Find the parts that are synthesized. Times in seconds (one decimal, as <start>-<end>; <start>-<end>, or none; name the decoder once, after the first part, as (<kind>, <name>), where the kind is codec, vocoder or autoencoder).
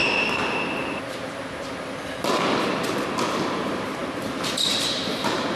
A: 2.8-5.6 (vocoder, BigVGAN v2)